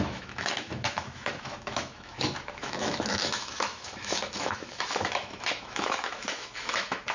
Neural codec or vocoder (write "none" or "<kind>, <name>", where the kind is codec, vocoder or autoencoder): autoencoder, DAC-VAE